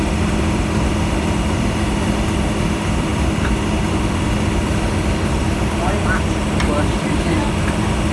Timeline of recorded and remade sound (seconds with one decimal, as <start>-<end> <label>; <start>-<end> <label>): 0.0-8.1 recorded